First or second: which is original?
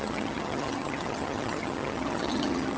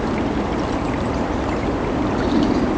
second